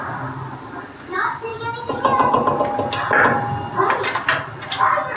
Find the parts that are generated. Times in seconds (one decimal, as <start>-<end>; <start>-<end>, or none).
none